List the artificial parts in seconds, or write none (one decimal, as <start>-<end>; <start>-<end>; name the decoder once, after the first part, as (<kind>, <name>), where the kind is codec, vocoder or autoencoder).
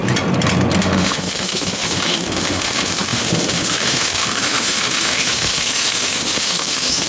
0.8-7.1 (autoencoder, DAC-VAE)